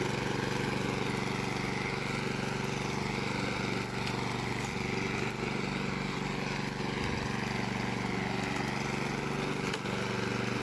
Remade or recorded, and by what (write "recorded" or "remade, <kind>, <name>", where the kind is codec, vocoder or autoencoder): recorded